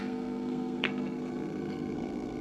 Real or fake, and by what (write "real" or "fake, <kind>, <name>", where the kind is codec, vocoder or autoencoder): fake, codec, SNAC